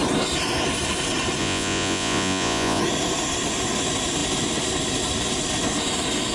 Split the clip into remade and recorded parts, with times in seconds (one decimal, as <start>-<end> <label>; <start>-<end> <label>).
0.0-1.4 recorded; 1.4-2.8 remade; 2.8-6.3 recorded

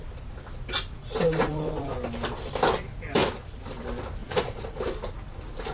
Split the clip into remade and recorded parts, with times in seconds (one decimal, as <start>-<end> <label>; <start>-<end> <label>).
0.0-1.0 recorded; 1.0-1.9 remade; 1.9-4.2 recorded; 4.2-4.8 remade; 4.8-5.7 recorded

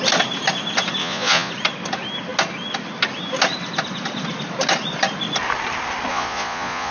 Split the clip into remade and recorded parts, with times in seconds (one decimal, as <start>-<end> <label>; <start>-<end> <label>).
0.0-1.0 recorded; 1.0-1.5 remade; 1.5-6.1 recorded; 6.1-6.9 remade

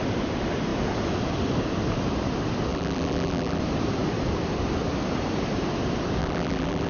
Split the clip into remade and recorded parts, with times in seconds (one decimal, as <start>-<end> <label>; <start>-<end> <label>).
0.0-2.7 recorded; 2.7-3.6 remade; 3.6-6.2 recorded; 6.2-6.9 remade